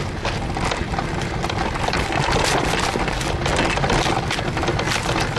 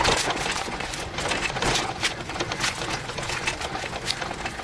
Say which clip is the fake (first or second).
second